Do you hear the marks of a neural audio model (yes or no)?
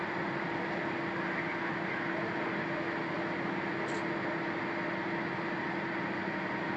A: no